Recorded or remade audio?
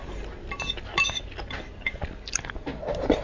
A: recorded